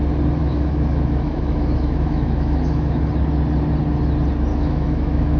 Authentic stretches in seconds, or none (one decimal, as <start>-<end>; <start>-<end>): 0.0-0.4; 3.0-4.5

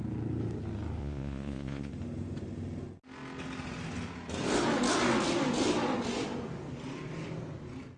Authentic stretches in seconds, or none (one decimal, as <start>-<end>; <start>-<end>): 0.0-1.0; 1.9-8.0

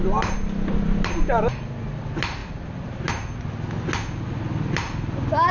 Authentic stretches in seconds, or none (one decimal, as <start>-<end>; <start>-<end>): 0.0-5.5

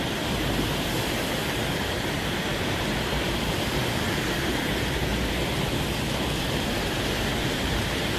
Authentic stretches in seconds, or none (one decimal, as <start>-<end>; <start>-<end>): 5.1-6.4

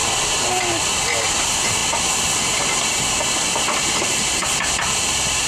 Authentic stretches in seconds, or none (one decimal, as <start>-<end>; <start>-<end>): 0.0-5.5

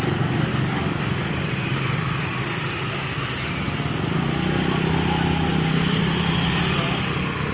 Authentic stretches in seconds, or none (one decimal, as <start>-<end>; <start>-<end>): 0.0-0.5; 1.0-7.5